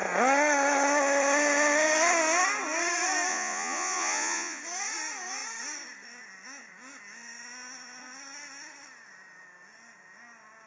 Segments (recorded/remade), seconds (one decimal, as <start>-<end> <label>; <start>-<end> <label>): 0.0-3.3 recorded; 3.3-4.6 remade; 4.6-10.7 recorded